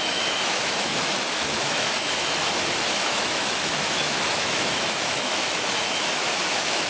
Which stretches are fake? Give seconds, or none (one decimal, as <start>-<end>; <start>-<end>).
0.0-6.9